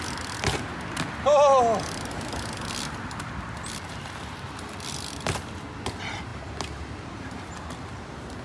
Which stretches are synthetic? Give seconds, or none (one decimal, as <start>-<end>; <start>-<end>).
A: none